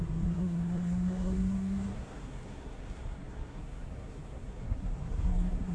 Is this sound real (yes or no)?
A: no